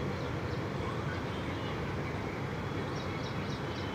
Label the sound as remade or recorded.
recorded